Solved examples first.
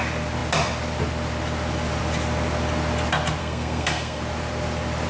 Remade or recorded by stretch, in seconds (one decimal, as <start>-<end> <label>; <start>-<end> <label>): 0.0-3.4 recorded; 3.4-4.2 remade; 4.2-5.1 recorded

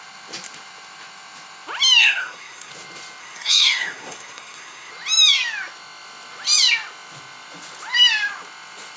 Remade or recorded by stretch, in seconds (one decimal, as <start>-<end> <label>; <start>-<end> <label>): 0.0-2.0 recorded; 2.0-2.7 remade; 2.7-3.2 recorded; 3.2-4.9 remade; 4.9-9.0 recorded

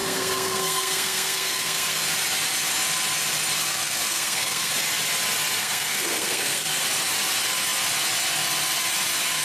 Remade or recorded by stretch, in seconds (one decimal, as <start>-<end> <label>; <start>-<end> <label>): 0.0-2.1 remade; 2.1-3.7 recorded; 3.7-4.7 remade; 4.7-5.6 recorded; 5.6-6.8 remade; 6.8-9.4 recorded